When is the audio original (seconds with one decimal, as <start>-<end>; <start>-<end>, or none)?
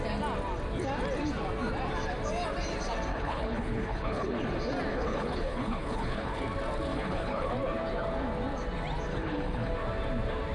0.0-3.1; 4.4-4.9; 6.4-6.9; 7.5-9.1; 9.7-10.5